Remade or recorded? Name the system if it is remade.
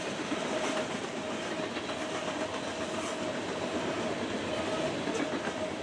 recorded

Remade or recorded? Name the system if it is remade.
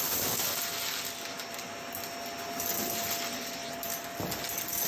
recorded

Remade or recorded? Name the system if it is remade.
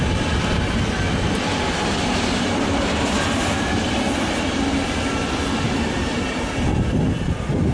recorded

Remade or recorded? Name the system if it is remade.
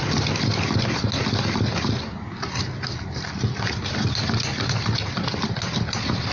recorded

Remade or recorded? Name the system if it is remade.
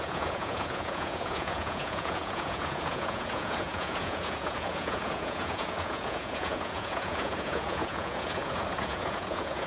remade, vocoder, Vocos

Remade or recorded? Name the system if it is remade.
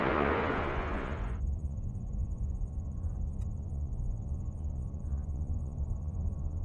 remade, vocoder, Vocos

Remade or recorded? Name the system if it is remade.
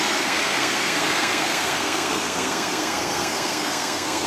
remade, codec, SNAC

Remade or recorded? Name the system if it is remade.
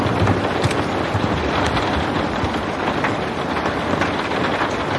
recorded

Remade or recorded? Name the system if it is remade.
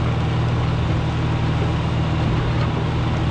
recorded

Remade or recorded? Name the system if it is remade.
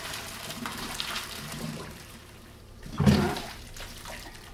remade, vocoder, BigVGAN v2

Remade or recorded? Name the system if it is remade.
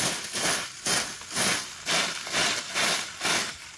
recorded